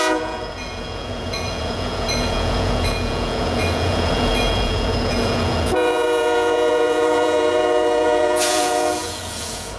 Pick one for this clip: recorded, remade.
remade